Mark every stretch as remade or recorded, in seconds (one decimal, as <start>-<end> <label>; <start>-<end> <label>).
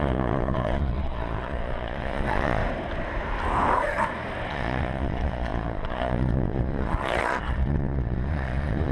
0.0-2.6 remade; 2.6-4.5 recorded; 4.5-8.9 remade